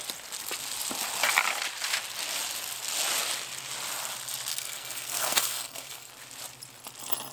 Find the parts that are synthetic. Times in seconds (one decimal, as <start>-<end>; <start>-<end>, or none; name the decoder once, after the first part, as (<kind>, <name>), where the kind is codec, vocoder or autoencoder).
4.5-6.1 (codec, SNAC)